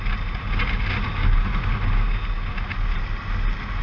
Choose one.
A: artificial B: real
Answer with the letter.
B